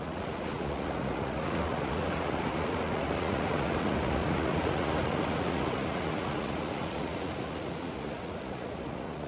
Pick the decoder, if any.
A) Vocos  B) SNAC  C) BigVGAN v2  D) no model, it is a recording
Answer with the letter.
A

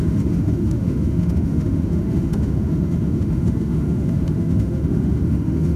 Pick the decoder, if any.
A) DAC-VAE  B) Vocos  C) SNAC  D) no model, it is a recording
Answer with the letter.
A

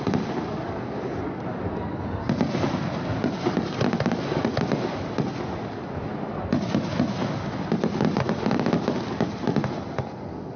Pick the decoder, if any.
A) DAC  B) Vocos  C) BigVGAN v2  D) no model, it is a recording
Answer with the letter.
D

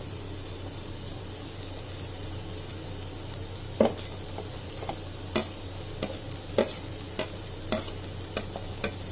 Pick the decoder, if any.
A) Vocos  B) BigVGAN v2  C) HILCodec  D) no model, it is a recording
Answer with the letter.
D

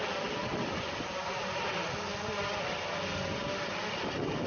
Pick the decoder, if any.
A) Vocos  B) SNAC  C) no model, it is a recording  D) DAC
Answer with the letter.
C